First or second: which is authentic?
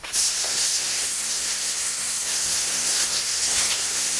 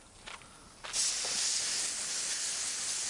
second